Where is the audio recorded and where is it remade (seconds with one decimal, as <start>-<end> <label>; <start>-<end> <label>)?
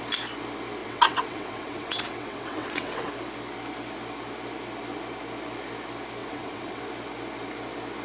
0.0-0.8 recorded; 0.8-3.1 remade; 3.1-6.2 recorded; 6.2-6.8 remade; 6.8-8.0 recorded